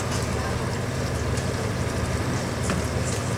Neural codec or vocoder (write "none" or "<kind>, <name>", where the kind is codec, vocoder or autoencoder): none